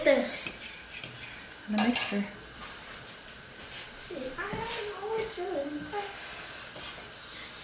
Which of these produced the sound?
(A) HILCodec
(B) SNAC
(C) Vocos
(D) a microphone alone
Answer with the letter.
D